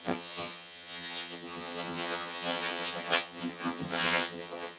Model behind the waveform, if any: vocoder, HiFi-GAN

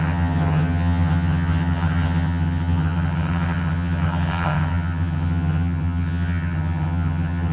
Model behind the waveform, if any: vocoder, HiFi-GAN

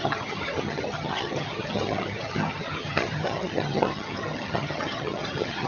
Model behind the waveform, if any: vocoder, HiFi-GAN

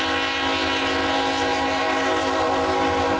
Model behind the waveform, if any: none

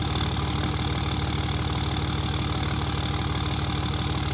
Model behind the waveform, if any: none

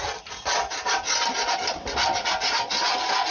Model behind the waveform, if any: none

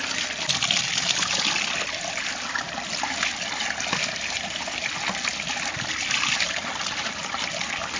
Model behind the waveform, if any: none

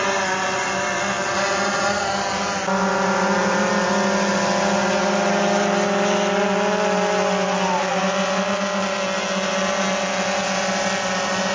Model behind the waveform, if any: none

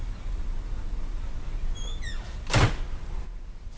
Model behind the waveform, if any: none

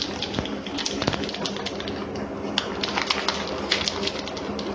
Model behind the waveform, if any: none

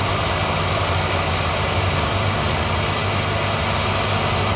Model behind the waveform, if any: none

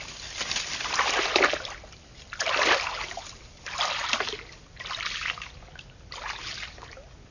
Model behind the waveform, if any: none